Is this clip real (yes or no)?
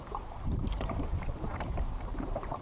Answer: no